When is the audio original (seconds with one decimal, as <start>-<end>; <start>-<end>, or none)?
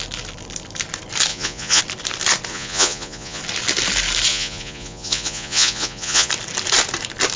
0.0-1.3; 1.8-2.5; 3.4-4.3; 6.3-7.4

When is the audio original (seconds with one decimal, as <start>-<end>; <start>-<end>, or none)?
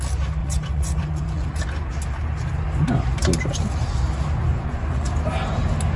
0.0-0.4; 1.6-4.5; 5.1-6.0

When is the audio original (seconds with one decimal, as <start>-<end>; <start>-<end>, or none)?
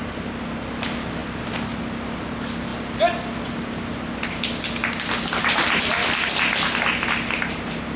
0.0-8.0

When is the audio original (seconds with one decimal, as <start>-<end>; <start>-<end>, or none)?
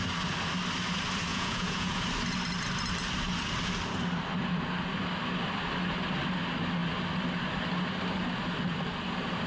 0.0-1.3; 2.0-9.5